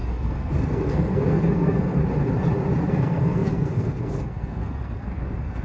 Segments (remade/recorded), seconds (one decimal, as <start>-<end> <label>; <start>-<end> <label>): 0.0-2.0 remade; 2.0-2.9 recorded; 2.9-5.6 remade

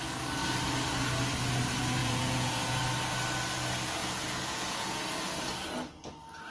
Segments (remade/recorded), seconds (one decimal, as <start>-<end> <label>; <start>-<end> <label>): 0.0-2.0 recorded; 2.0-2.8 remade; 2.8-4.0 recorded; 4.0-5.0 remade; 5.0-6.5 recorded

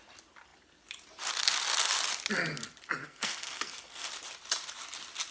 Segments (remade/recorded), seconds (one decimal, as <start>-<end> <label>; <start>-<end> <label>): 0.0-3.0 recorded; 3.0-4.1 remade; 4.1-5.3 recorded

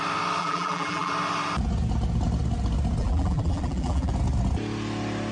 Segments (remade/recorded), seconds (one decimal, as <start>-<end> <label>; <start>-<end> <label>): 0.0-0.4 recorded; 0.4-1.1 remade; 1.1-3.0 recorded; 3.0-4.1 remade; 4.1-5.3 recorded

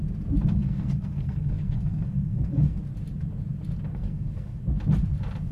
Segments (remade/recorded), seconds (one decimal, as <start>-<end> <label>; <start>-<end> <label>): 0.0-0.6 recorded; 0.6-2.8 remade; 2.8-3.9 recorded; 3.9-4.6 remade; 4.6-5.5 recorded